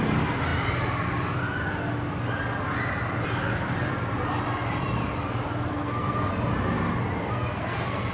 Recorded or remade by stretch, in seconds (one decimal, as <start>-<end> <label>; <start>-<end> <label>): 0.0-5.7 recorded; 5.7-6.3 remade; 6.3-7.2 recorded; 7.2-8.1 remade